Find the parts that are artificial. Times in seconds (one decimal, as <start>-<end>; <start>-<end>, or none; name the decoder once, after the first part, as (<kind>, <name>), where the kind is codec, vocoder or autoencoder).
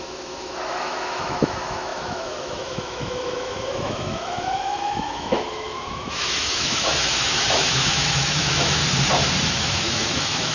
0.0-8.8 (autoencoder, DAC-VAE); 9.5-10.5